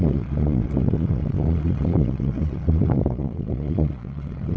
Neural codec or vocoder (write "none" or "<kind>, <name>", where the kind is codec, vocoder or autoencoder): vocoder, Vocos